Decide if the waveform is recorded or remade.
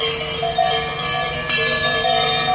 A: recorded